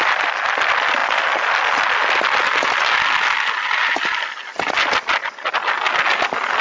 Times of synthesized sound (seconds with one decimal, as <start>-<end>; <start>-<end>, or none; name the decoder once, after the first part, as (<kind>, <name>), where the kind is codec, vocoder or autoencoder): none